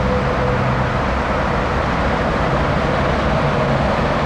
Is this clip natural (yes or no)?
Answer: yes